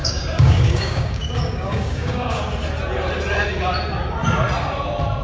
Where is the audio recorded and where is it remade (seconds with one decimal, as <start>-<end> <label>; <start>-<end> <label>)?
0.0-2.4 remade; 2.4-5.2 recorded